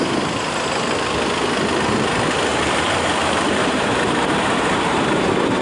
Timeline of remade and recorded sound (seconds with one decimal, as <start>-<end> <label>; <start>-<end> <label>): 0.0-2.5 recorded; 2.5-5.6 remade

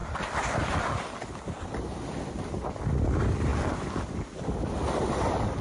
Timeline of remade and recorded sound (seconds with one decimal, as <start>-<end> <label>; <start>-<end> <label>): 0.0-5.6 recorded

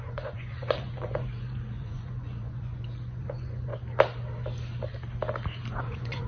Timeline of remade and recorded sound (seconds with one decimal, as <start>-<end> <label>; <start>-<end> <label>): 0.0-3.7 remade; 3.7-5.8 recorded; 5.8-6.3 remade

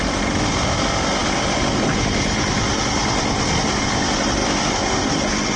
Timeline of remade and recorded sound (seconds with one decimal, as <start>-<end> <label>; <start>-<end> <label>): 0.0-5.6 recorded

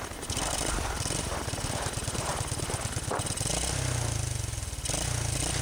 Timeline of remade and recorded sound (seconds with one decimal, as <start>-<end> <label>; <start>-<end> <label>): 0.0-5.6 recorded

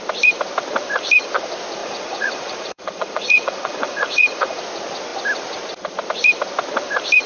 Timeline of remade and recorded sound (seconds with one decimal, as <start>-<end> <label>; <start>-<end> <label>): 0.0-1.8 recorded; 1.8-4.6 remade; 4.6-7.3 recorded

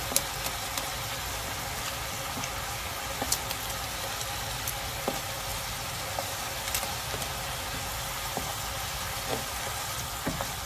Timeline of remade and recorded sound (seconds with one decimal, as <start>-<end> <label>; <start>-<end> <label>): 0.0-10.7 recorded

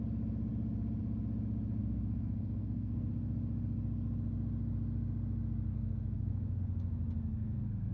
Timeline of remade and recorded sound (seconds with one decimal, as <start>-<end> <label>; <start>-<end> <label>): 0.0-1.8 recorded; 1.8-3.1 remade; 3.1-5.7 recorded; 5.7-6.6 remade; 6.6-7.3 recorded; 7.3-7.9 remade